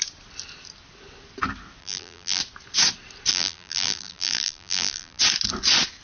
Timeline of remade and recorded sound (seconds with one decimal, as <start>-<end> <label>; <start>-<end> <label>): 0.0-1.8 recorded; 1.8-2.4 remade; 2.4-3.3 recorded; 3.3-5.2 remade; 5.2-6.0 recorded